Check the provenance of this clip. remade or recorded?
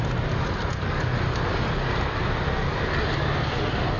recorded